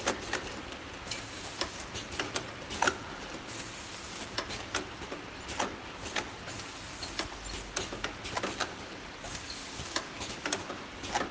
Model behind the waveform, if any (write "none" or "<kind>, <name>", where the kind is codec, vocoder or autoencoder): none